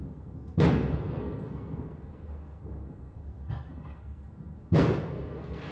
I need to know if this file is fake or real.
fake